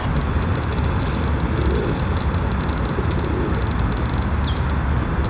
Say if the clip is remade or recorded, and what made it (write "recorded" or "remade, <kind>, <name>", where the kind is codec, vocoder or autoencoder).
recorded